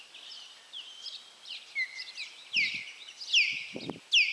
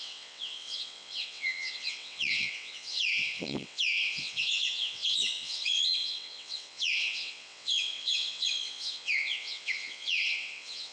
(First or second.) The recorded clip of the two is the first